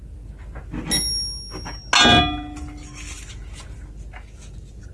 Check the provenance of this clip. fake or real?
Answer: real